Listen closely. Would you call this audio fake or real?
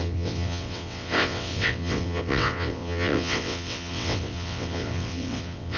fake